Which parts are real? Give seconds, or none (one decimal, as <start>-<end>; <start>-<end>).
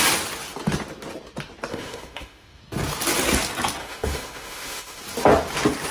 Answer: 0.0-1.7; 2.6-3.8; 5.0-5.9